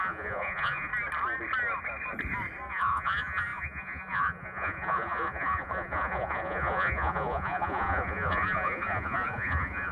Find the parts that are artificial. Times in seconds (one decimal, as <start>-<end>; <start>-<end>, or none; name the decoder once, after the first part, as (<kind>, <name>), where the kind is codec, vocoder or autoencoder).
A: 0.0-0.9 (vocoder, Vocos); 2.7-9.9